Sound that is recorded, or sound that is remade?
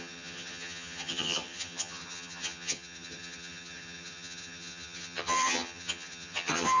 remade